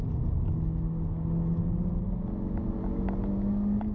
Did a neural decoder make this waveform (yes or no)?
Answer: no